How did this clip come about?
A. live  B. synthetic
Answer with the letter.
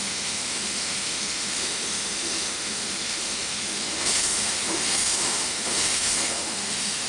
B